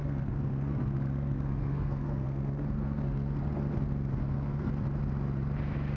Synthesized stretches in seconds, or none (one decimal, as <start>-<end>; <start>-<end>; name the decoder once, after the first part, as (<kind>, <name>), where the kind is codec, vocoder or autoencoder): 0.0-3.6 (codec, SNAC); 4.2-4.7